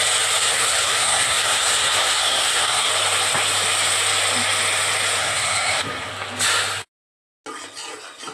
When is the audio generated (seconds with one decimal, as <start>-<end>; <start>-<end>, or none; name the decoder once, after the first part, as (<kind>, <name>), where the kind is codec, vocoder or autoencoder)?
0.4-2.9 (codec, SNAC); 5.2-6.1

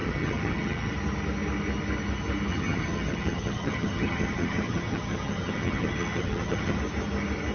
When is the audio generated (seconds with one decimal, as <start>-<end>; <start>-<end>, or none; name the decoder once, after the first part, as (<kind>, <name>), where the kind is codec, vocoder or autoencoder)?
0.0-0.9 (vocoder, HiFi-GAN); 2.5-6.8

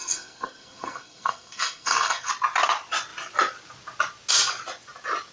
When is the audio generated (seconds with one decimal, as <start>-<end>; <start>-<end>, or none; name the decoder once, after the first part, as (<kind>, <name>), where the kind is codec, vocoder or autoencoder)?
0.0-2.3 (codec, SNAC)